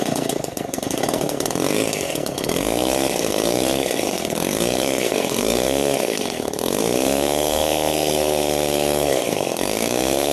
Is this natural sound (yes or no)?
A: no